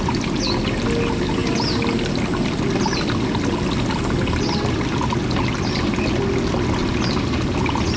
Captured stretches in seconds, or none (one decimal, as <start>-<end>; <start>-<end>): 0.0-8.0